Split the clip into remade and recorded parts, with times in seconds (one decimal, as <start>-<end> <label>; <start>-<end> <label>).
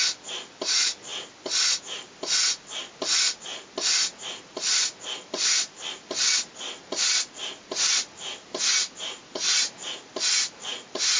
0.0-11.2 recorded